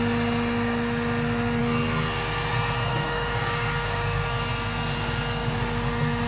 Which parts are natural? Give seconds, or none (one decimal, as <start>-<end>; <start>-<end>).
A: 0.0-2.9; 4.5-5.4